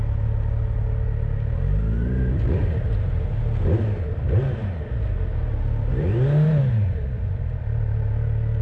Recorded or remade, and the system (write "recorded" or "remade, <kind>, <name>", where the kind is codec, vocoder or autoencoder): recorded